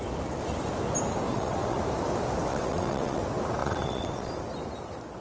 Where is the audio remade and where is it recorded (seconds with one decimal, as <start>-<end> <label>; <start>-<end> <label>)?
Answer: 0.0-1.3 recorded; 1.3-1.8 remade; 1.8-2.5 recorded; 2.5-3.2 remade; 3.2-3.6 recorded; 3.6-4.3 remade; 4.3-5.2 recorded